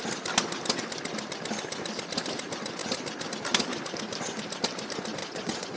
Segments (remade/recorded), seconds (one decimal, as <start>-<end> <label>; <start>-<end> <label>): 0.0-5.2 recorded; 5.2-5.8 remade